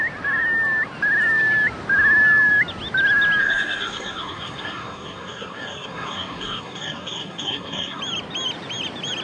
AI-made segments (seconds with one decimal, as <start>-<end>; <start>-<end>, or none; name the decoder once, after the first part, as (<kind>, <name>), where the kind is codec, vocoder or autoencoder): 3.4-8.0 (codec, SNAC)